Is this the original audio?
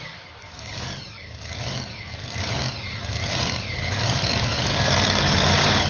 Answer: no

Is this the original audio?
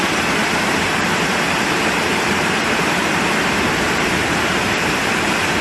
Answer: no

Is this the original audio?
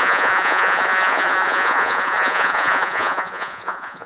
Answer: no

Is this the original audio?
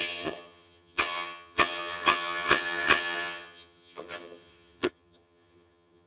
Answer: no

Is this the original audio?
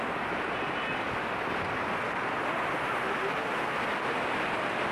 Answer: yes